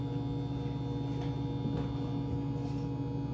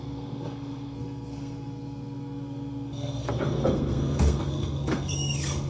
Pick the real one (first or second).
first